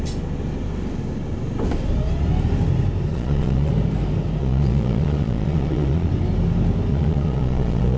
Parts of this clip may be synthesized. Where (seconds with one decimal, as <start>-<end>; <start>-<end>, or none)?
3.1-3.7; 4.4-6.1; 6.9-8.0